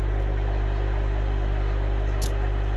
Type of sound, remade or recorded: recorded